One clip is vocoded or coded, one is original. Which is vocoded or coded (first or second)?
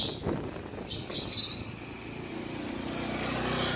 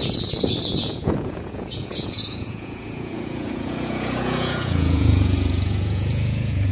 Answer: second